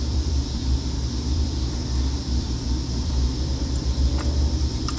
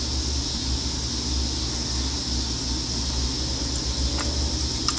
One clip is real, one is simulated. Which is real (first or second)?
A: second